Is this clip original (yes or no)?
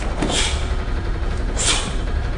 no